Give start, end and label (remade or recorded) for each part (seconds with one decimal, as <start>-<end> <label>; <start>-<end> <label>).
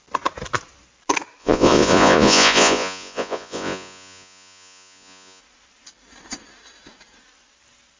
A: 0.0-1.4 recorded; 1.4-5.4 remade; 5.4-8.0 recorded